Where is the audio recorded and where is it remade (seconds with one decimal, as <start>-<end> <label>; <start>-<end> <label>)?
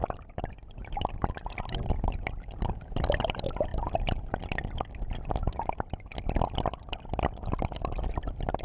0.0-0.8 recorded; 0.8-2.1 remade; 2.1-3.7 recorded; 3.7-6.8 remade; 6.8-8.6 recorded